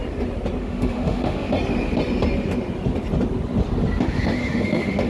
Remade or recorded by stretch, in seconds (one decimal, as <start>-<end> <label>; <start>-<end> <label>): 0.0-0.6 recorded; 0.6-1.5 remade; 1.5-4.0 recorded; 4.0-5.1 remade